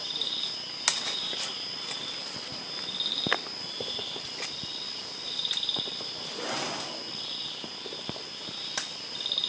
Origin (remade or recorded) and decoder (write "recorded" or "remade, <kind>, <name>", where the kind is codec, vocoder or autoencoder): recorded